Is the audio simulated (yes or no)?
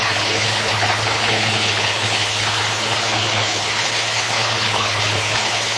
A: yes